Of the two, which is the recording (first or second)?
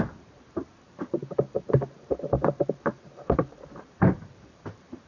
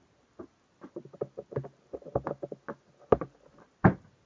second